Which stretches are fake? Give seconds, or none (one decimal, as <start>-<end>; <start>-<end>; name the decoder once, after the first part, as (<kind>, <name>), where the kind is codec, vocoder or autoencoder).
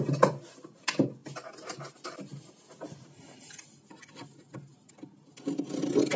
none